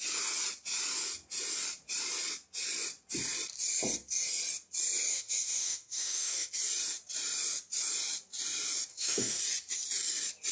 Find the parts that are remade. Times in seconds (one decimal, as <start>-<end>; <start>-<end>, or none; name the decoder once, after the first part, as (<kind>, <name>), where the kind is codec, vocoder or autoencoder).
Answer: 5.1-6.5 (autoencoder, DAC-VAE); 8.9-9.4